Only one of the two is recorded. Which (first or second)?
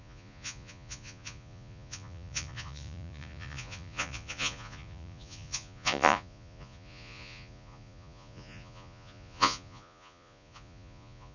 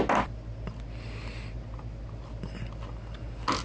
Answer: second